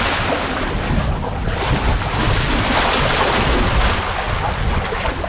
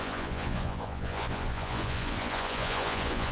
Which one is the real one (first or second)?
first